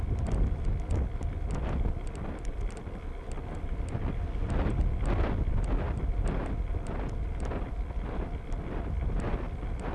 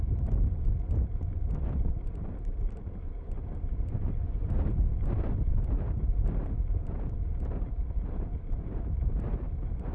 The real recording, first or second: first